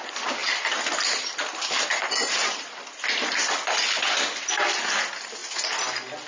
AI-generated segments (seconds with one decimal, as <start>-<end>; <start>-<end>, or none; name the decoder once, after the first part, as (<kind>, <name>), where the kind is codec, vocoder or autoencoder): 0.4-4.2 (vocoder, BigVGAN v2)